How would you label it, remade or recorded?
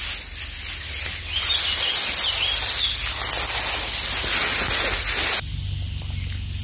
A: recorded